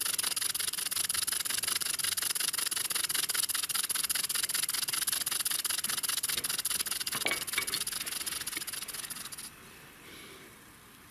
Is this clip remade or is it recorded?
recorded